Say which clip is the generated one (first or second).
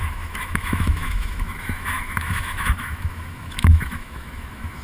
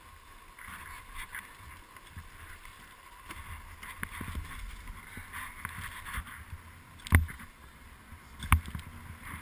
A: first